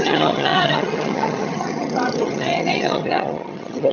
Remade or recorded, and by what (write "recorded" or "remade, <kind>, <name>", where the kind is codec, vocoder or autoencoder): remade, vocoder, HiFi-GAN